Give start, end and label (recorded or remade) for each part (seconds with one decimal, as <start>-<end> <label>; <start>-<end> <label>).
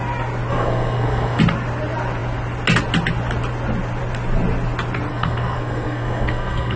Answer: 0.0-0.5 recorded; 0.5-1.4 remade; 1.4-5.1 recorded; 5.1-6.8 remade